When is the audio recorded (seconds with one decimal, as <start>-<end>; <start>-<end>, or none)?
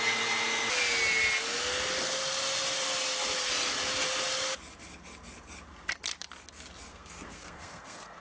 0.0-6.9